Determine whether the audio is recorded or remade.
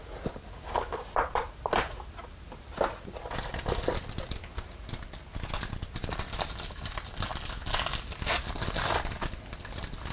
recorded